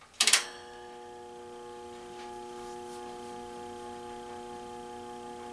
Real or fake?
real